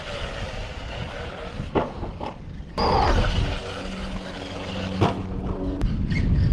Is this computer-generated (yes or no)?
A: no